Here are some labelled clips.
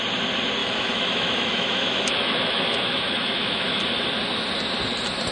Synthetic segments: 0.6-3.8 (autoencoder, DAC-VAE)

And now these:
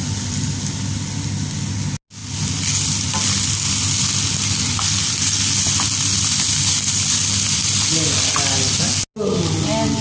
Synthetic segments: none

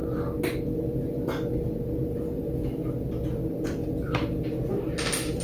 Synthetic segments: none